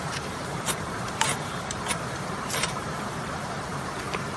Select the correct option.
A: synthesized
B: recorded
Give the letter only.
A